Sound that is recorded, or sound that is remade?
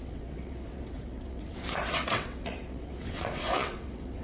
remade